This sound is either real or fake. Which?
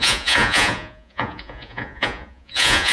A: fake